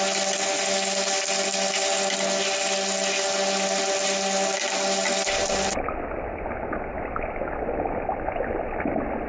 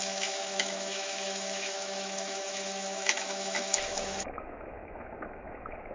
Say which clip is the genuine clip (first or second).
first